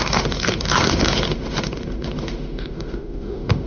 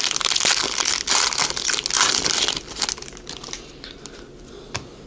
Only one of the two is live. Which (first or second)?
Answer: second